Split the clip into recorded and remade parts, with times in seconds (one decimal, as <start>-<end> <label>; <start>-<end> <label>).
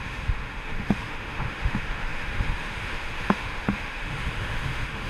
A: 0.0-5.1 remade